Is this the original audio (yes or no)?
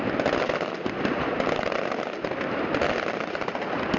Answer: yes